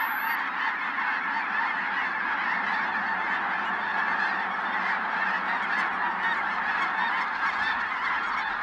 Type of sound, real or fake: real